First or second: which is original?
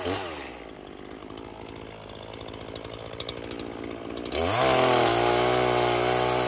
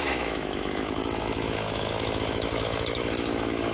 first